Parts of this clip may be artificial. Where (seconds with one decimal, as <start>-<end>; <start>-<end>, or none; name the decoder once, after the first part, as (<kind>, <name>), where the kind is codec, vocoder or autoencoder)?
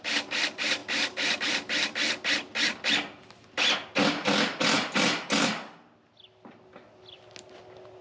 none